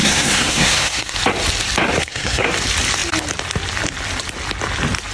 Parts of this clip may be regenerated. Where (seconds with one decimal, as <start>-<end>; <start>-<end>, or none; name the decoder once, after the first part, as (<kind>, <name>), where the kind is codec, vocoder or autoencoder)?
0.0-1.1 (codec, SNAC); 2.0-2.5